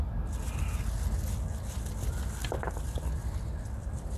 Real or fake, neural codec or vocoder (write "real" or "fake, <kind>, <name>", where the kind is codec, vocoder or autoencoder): real